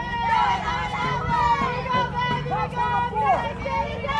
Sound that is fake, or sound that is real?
real